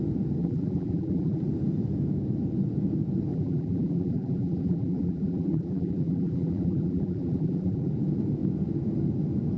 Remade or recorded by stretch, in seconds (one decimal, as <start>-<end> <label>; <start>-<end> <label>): 0.0-0.4 recorded; 0.4-1.4 remade; 1.4-3.3 recorded; 3.3-7.9 remade; 7.9-9.6 recorded